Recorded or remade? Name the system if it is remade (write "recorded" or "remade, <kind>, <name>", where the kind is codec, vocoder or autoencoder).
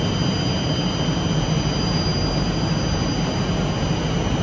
remade, vocoder, BigVGAN v2